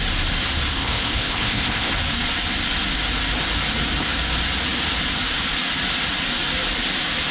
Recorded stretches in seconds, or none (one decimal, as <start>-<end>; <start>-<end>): 0.0-0.7; 1.9-7.3